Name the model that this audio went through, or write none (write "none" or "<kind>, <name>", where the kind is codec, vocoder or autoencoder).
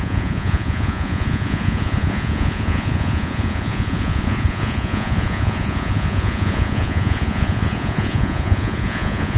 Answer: vocoder, Vocos